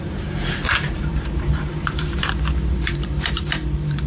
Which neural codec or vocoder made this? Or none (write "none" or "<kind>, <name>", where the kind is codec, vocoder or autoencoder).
vocoder, BigVGAN v2